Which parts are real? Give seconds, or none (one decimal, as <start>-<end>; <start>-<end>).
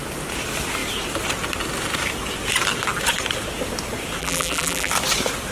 0.0-4.2; 4.9-5.5